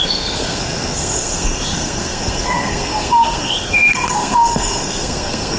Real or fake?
fake